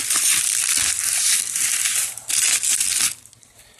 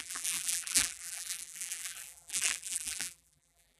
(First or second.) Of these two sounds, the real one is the first